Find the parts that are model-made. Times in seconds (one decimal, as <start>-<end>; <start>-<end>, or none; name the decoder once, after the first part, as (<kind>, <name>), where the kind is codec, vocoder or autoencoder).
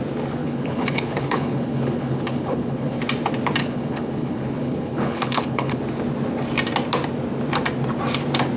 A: 0.4-3.0 (codec, HILCodec); 3.6-5.8